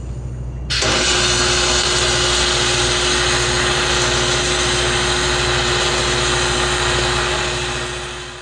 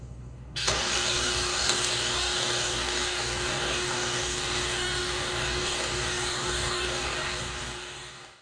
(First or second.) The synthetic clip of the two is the second